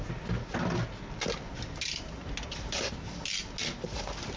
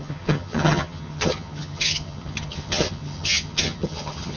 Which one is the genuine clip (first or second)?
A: first